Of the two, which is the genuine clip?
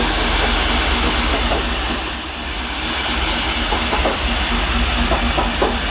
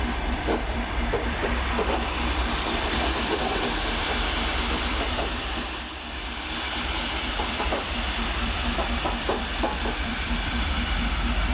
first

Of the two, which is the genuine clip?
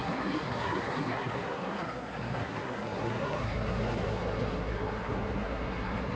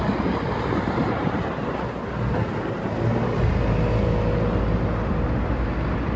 second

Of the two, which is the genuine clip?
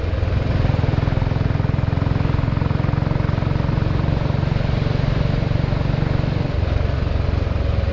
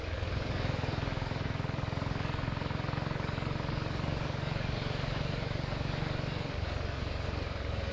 first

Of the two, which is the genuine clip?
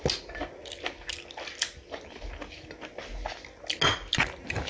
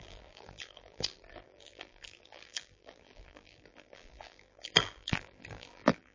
first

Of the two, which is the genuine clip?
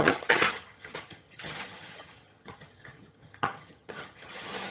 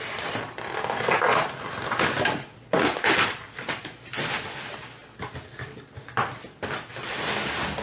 second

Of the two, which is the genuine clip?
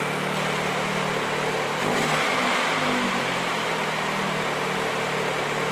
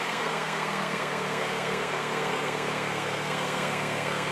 first